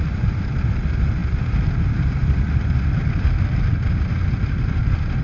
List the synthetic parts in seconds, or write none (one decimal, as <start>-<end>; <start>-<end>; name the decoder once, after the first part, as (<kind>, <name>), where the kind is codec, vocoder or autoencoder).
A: 0.0-1.2 (vocoder, BigVGAN v2); 1.7-2.2; 4.8-5.2